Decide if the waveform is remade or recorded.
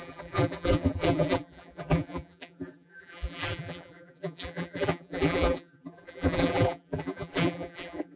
remade